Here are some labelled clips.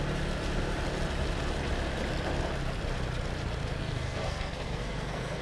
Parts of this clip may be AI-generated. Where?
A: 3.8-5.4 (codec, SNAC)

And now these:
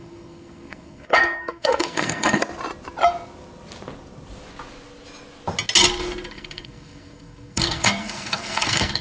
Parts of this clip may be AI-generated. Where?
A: 0.0-2.4 (codec, SNAC); 6.3-9.0

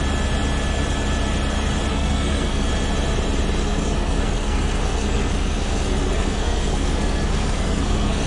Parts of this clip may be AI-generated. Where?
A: 1.9-2.7 (codec, SNAC); 3.6-8.3